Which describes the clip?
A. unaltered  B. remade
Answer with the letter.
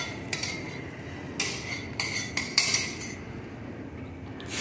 A